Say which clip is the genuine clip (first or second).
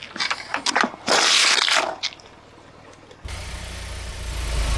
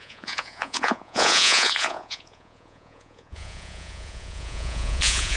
first